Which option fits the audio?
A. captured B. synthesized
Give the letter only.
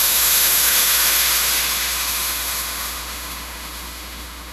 B